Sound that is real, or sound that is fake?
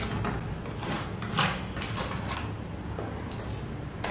real